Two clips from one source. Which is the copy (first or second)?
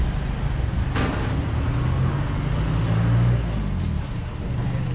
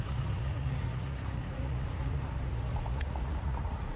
second